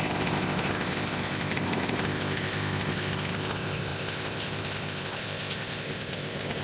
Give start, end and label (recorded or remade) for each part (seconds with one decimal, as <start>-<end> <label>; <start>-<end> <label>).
0.0-6.6 remade